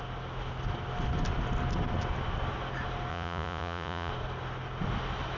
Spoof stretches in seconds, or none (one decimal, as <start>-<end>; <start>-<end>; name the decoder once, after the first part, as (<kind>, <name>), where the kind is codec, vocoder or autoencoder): 3.1-4.1 (vocoder, Vocos)